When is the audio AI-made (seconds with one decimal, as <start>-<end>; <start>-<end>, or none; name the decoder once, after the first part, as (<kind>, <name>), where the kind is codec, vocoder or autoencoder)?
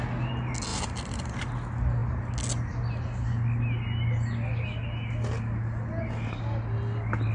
0.7-1.4 (vocoder, BigVGAN v2)